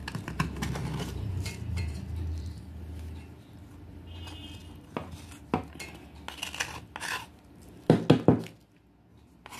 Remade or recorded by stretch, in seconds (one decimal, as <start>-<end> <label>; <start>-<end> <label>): 0.0-2.6 remade; 2.6-9.1 recorded; 9.1-9.6 remade